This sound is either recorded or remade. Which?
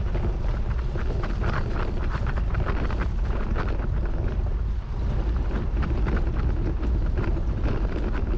recorded